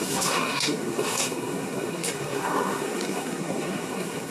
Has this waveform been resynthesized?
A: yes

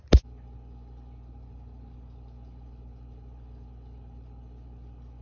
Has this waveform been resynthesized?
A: no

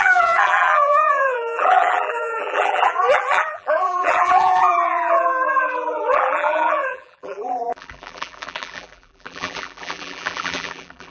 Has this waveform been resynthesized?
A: yes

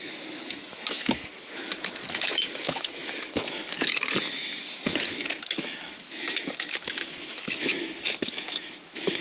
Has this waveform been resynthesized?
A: yes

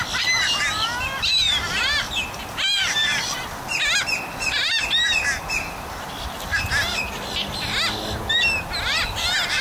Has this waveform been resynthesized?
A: no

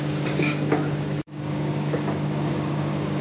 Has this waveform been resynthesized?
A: yes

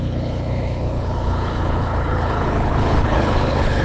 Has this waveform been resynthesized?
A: yes